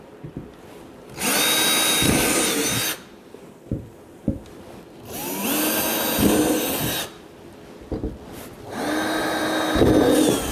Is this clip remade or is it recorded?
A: recorded